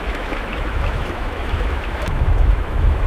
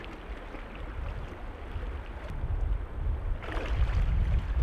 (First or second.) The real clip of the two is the second